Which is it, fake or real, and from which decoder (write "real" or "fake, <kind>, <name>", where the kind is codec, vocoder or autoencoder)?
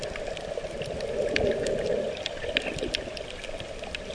real